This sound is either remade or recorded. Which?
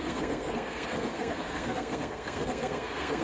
remade